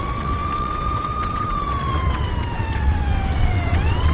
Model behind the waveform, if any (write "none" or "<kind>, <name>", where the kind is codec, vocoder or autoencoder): vocoder, WaveNeXt